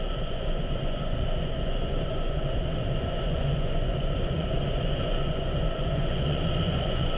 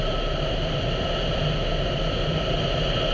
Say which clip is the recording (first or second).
second